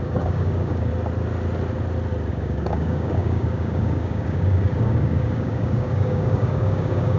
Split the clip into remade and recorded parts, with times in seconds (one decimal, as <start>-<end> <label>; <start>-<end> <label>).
0.0-0.9 remade; 0.9-2.3 recorded; 2.3-7.2 remade